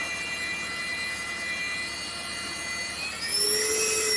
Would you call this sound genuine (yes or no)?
yes